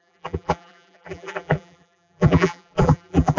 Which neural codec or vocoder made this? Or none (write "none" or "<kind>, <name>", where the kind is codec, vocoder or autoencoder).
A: vocoder, BigVGAN v2